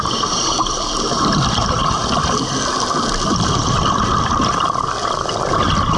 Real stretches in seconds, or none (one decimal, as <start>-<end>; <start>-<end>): 0.0-6.0